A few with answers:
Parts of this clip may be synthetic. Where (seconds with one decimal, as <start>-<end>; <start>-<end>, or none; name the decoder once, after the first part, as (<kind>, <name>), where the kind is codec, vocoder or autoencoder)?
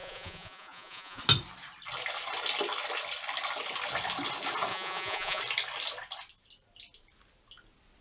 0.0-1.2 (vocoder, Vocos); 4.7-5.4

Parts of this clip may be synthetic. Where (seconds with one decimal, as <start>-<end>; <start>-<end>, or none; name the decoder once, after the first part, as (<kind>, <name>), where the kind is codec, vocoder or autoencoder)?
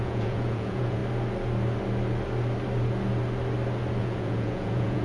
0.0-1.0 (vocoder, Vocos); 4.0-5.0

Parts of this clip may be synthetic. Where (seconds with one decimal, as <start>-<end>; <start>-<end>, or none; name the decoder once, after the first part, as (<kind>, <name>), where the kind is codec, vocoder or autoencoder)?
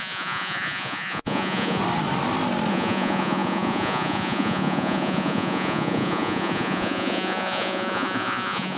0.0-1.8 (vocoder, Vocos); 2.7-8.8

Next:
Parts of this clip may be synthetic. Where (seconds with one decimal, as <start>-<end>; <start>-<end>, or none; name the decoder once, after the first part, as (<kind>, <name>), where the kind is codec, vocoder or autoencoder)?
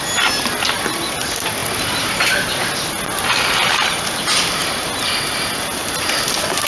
none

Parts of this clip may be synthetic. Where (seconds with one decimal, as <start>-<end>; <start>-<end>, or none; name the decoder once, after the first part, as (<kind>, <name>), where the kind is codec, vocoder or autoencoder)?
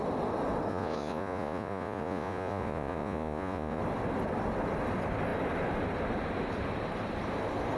0.7-3.8 (vocoder, Vocos)